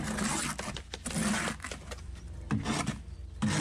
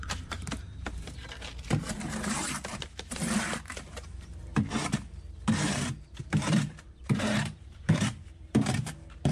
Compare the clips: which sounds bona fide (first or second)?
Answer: first